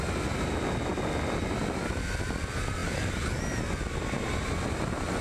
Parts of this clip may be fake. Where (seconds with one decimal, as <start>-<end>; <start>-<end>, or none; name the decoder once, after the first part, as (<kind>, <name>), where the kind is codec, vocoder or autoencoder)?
none

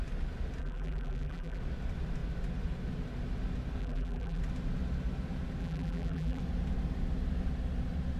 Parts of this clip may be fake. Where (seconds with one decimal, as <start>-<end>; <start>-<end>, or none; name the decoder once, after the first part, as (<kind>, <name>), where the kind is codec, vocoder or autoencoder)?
0.6-1.6 (vocoder, BigVGAN v2); 3.8-4.4; 5.6-6.4

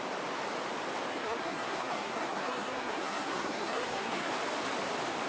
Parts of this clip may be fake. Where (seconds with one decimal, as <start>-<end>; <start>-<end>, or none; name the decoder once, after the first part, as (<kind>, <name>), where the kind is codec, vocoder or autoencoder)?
1.1-4.3 (codec, SNAC)

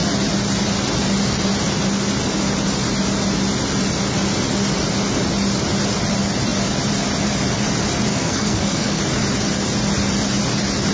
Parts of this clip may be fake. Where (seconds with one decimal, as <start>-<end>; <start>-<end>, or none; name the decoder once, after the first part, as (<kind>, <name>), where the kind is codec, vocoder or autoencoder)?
8.1-9.0 (codec, SNAC)

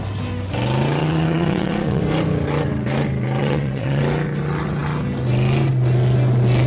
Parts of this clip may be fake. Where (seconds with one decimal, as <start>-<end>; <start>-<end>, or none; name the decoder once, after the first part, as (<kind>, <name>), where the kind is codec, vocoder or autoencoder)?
1.0-2.0 (vocoder, WaveNeXt); 3.4-4.0

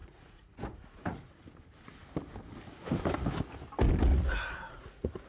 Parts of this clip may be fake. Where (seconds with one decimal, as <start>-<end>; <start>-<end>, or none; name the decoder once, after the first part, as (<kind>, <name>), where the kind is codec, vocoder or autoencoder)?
0.0-1.3 (vocoder, Vocos); 4.1-5.3